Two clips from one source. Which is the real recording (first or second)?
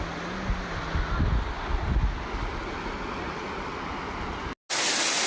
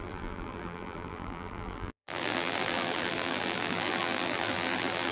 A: first